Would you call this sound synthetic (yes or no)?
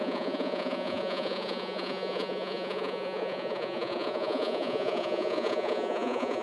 yes